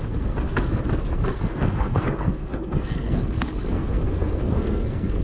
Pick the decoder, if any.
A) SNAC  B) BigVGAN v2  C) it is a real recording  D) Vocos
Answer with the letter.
A